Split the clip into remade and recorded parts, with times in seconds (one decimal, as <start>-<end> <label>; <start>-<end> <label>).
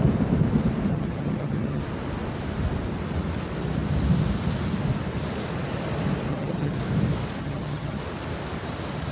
0.0-0.9 recorded; 0.9-1.8 remade; 1.8-6.3 recorded; 6.3-6.8 remade; 6.8-7.4 recorded; 7.4-8.0 remade; 8.0-9.1 recorded